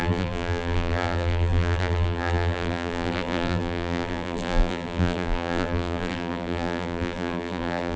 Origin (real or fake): fake